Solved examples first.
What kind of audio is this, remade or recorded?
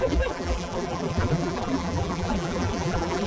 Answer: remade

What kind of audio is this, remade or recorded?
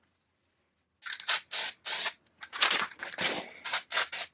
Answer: recorded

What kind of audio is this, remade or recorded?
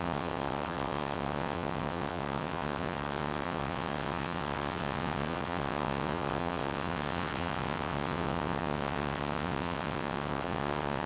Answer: remade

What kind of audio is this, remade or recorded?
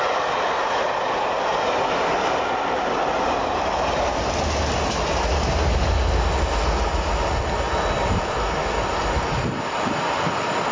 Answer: recorded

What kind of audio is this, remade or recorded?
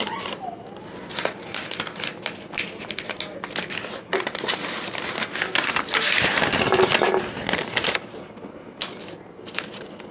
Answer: recorded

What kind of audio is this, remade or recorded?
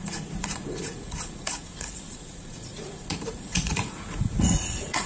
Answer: remade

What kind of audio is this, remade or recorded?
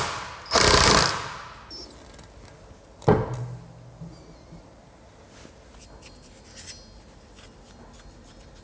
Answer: recorded